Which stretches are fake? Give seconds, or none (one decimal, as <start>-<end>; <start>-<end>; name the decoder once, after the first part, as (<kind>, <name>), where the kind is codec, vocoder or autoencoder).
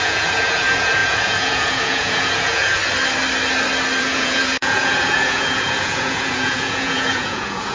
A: 0.0-2.8 (vocoder, Vocos); 4.0-7.7